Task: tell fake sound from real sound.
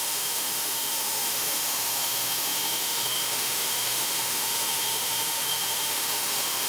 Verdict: fake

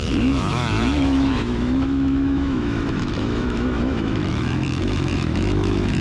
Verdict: fake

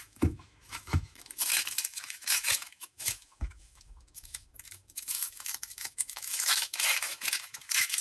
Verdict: fake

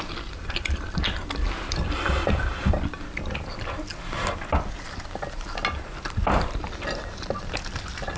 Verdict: real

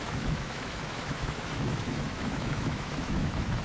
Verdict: fake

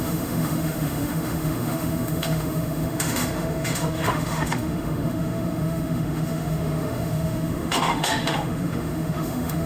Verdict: fake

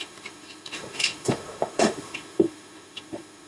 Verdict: fake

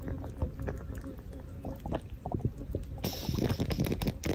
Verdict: real